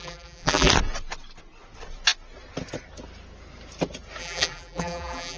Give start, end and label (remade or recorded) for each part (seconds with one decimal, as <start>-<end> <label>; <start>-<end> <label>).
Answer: 0.0-0.7 remade; 0.7-4.2 recorded; 4.2-5.4 remade